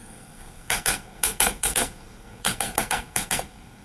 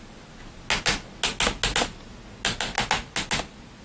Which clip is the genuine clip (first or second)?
second